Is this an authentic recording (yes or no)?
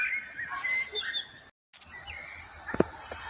yes